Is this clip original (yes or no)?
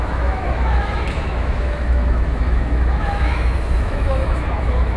no